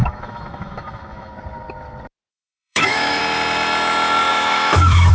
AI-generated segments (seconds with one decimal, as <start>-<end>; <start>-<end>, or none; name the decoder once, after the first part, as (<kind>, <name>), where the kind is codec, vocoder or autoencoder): 0.0-1.3 (autoencoder, DAC-VAE); 2.3-3.2; 4.3-5.1